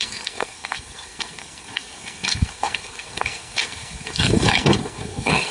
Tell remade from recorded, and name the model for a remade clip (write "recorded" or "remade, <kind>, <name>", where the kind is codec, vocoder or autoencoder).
remade, codec, SNAC